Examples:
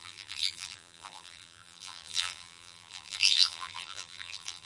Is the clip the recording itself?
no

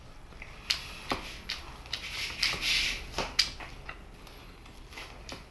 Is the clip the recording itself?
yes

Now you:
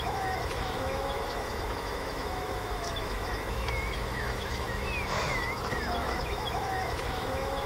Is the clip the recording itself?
no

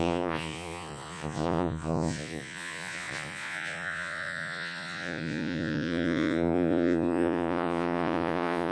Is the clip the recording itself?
no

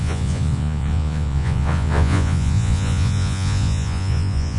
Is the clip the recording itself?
no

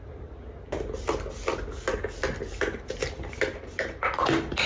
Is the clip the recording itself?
yes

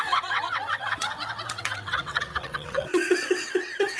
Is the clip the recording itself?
no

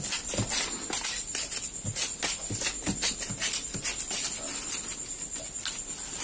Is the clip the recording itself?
yes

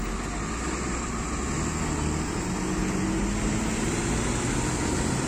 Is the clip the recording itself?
yes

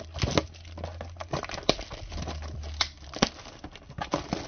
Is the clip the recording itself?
yes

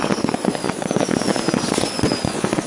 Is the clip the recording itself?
no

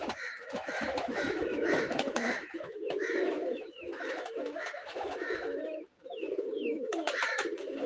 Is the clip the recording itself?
no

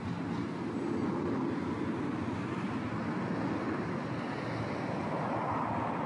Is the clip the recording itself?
yes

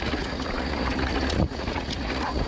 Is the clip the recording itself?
no